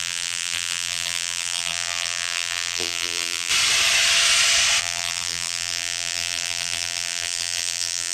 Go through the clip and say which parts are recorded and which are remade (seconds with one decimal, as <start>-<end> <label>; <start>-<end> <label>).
0.0-3.5 remade; 3.5-4.8 recorded; 4.8-8.1 remade